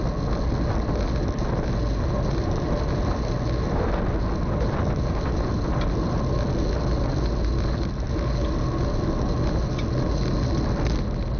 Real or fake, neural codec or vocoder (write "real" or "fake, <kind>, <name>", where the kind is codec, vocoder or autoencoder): real